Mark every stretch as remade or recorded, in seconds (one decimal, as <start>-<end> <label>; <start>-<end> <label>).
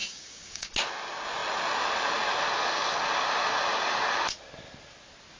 0.0-0.7 remade; 0.7-5.4 recorded